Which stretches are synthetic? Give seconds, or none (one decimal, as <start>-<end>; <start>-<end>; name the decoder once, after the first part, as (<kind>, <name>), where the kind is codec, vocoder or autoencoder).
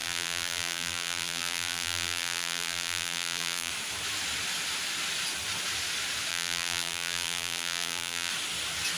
0.0-3.7 (vocoder, BigVGAN v2); 6.3-8.3